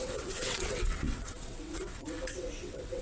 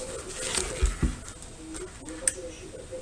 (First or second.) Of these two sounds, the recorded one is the second